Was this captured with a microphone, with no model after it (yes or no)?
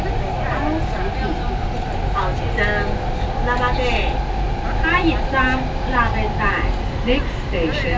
yes